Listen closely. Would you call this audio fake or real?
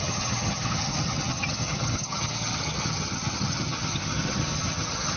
fake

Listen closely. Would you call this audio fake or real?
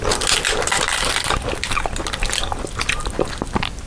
real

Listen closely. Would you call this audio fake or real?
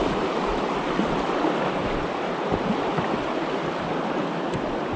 real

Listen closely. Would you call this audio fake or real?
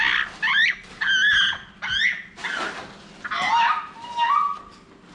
real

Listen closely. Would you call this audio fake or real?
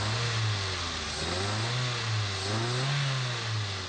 real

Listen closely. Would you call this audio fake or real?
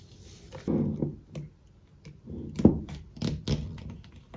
real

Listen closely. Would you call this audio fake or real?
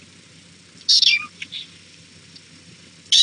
real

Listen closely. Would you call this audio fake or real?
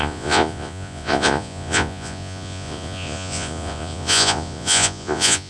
fake